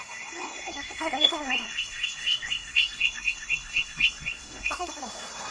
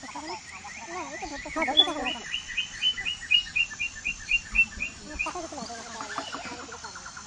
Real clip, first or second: second